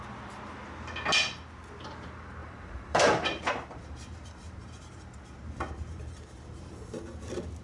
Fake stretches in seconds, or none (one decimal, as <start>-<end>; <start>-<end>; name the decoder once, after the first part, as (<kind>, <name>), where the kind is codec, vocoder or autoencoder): 2.4-7.0 (vocoder, BigVGAN v2)